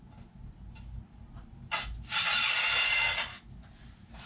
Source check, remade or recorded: recorded